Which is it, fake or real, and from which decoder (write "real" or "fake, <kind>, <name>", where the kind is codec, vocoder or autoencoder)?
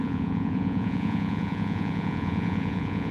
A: fake, vocoder, Vocos